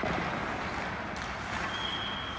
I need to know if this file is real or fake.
real